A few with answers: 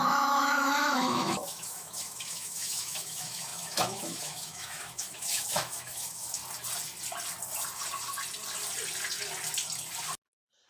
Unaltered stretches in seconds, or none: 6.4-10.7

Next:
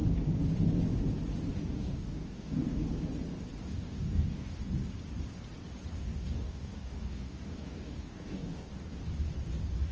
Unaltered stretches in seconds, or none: 0.0-1.6; 2.9-3.6; 4.6-6.0; 8.7-9.9

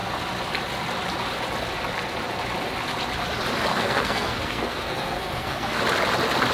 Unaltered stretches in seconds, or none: 0.0-3.7; 5.8-6.5

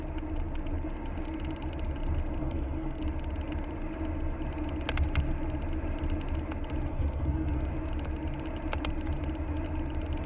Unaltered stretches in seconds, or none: 0.0-2.4; 3.0-6.9; 7.7-10.3